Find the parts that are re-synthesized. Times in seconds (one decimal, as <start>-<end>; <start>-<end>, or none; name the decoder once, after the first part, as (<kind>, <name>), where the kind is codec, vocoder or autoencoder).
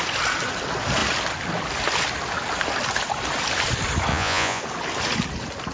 4.1-4.6 (vocoder, Vocos)